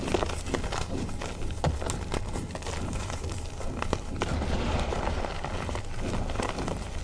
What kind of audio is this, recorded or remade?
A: recorded